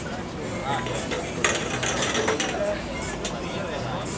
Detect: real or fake real